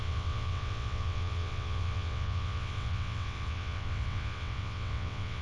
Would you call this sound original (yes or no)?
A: no